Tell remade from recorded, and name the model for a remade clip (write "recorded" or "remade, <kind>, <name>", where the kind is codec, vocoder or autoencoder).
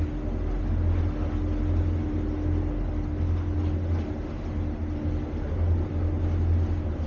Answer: recorded